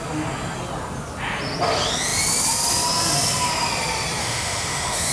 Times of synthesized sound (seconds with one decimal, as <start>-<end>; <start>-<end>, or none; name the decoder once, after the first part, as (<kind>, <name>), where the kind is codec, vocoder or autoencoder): 4.2-5.1 (autoencoder, DAC-VAE)